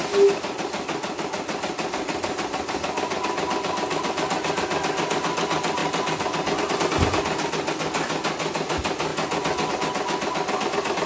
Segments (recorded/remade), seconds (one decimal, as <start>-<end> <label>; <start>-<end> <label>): 0.0-11.1 recorded